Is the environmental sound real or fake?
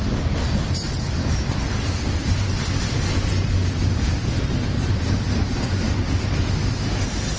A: real